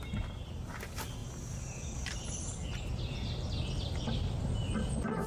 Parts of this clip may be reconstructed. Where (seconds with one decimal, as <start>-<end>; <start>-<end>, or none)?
none

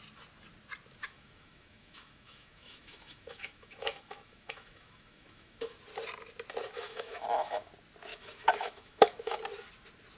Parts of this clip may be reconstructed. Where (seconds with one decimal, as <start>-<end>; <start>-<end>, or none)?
1.0-5.8; 6.6-7.7; 8.1-9.4